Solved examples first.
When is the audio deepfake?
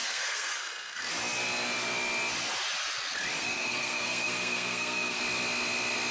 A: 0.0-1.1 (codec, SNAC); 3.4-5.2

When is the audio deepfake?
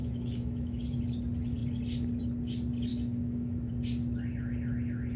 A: 0.0-1.0 (autoencoder, DAC-VAE); 2.9-3.7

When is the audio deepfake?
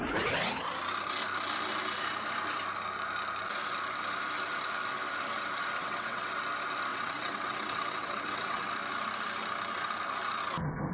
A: 5.8-6.3 (vocoder, WaveNeXt); 6.9-8.7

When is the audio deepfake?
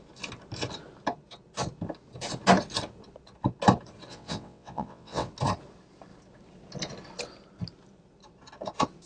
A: 4.1-5.3 (vocoder, WaveNeXt)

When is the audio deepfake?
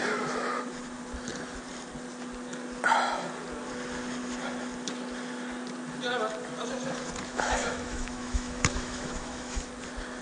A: 7.3-9.7 (autoencoder, DAC-VAE)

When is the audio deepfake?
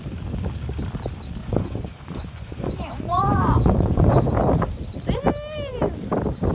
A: 1.4-4.2 (vocoder, Vocos)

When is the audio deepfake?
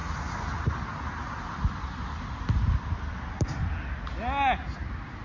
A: none